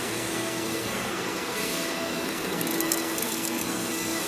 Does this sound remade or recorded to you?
remade